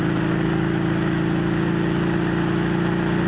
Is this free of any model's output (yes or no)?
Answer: yes